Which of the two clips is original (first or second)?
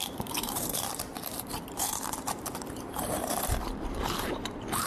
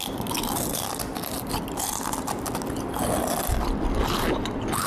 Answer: second